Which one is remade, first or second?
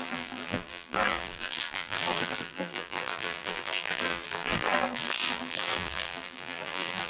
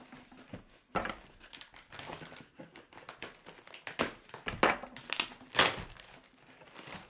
first